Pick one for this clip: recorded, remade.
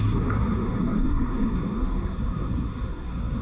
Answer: remade